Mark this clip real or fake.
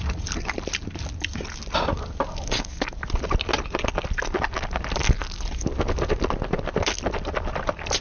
real